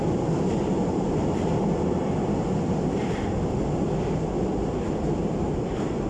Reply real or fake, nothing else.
real